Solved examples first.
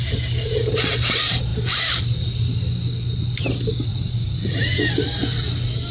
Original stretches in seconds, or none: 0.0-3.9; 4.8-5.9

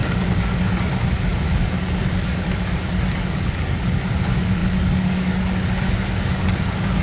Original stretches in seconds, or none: none